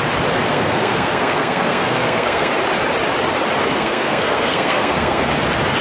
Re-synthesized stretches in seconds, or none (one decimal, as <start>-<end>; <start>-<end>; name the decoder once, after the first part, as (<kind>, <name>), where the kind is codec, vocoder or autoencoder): 0.5-2.5 (codec, SNAC); 3.6-5.3

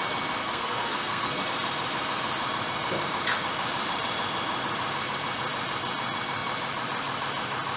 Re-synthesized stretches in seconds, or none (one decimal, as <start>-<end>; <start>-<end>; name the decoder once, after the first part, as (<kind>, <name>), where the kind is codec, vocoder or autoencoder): 0.4-1.4 (codec, SNAC)

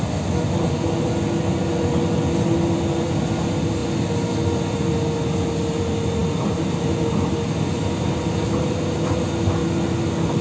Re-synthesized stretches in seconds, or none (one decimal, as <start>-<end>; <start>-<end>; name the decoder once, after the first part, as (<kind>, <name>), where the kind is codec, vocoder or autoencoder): none

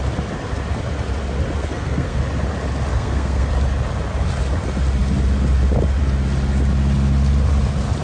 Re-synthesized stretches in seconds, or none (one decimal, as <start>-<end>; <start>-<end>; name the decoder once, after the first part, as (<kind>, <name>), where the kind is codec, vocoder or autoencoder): 1.6-2.2 (codec, SNAC); 2.9-3.5

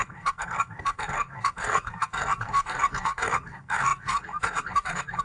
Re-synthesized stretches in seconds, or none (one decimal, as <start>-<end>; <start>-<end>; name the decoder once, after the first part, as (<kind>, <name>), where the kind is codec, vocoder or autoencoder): 0.0-5.2 (codec, SNAC)

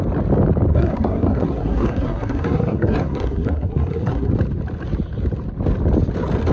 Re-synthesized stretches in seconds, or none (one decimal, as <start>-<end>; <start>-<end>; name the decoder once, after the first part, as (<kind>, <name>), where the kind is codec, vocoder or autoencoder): 0.7-4.3 (codec, SNAC)

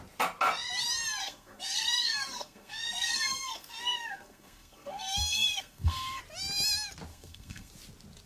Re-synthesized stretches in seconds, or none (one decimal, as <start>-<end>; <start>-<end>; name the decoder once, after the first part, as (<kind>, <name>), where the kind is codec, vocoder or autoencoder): 1.2-6.2 (codec, SNAC); 7.1-7.7